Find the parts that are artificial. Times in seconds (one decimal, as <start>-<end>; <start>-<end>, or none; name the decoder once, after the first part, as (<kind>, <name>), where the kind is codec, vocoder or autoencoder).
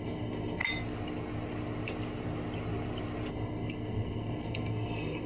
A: 0.0-0.6 (codec, SNAC); 3.3-5.3